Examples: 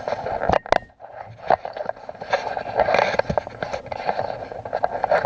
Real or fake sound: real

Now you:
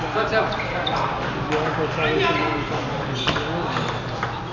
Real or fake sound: real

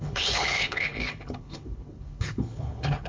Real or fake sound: fake